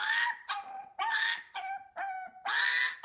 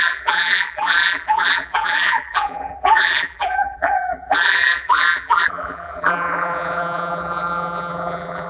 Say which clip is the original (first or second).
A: first